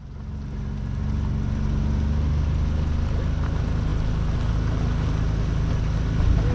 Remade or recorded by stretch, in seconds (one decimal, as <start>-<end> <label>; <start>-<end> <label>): 0.0-6.5 recorded